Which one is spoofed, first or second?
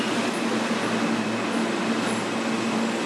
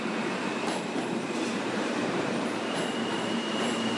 second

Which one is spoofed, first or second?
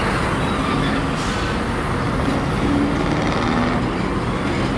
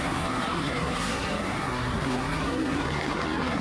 second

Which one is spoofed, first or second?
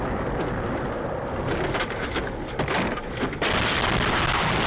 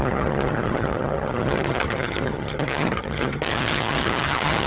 second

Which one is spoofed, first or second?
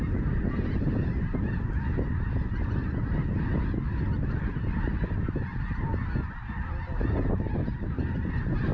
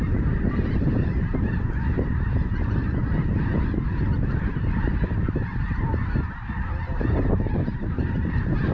second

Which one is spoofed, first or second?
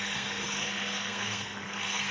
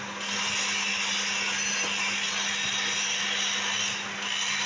first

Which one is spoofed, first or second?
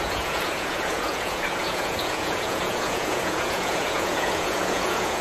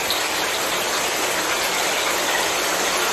first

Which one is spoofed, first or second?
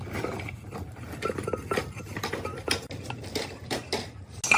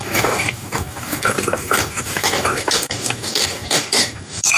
second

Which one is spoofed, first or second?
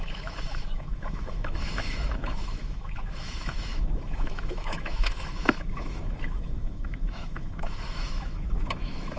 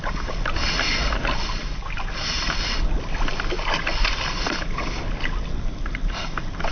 first